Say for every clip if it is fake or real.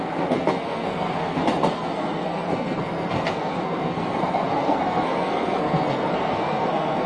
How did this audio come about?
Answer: fake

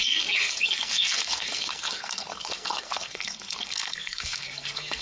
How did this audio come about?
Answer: fake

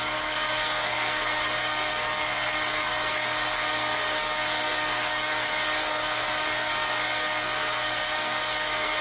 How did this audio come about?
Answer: fake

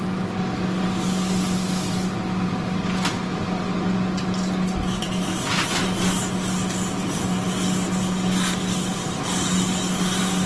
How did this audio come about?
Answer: real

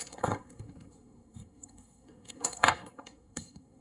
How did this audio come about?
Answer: fake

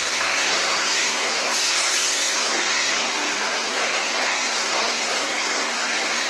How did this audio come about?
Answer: fake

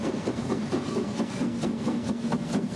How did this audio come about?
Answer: fake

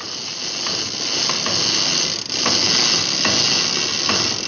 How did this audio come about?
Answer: real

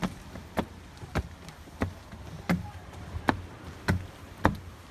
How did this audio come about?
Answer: real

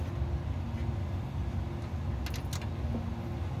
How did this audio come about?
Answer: real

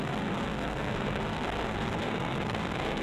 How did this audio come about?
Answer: fake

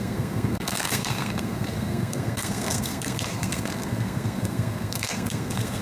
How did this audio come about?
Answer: fake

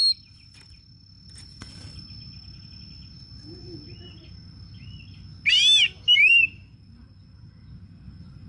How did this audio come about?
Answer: real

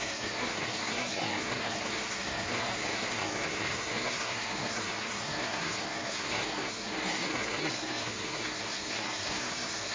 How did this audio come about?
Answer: fake